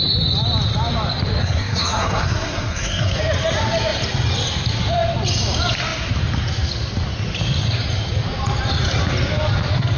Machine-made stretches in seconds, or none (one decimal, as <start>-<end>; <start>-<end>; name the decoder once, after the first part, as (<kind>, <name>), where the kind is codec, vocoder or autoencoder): 1.4-3.2 (codec, SNAC)